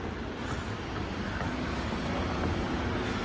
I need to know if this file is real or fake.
real